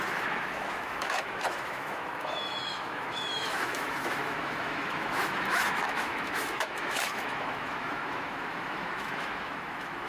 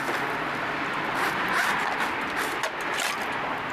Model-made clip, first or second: first